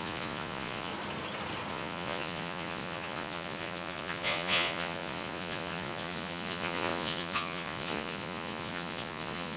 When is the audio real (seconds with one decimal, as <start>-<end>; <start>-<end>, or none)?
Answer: 0.9-1.7